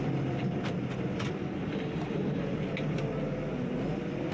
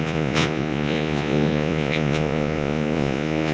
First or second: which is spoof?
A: second